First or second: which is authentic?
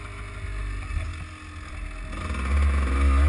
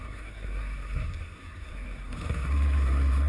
first